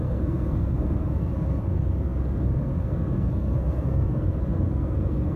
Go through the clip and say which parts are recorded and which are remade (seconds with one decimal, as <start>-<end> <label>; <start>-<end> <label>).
0.0-5.4 remade